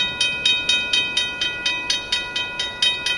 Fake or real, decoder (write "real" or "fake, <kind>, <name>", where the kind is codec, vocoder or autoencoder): real